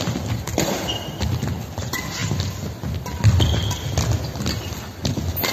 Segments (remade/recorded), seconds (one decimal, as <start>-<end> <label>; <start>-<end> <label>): 0.0-0.5 recorded; 0.5-1.7 remade; 1.7-5.5 recorded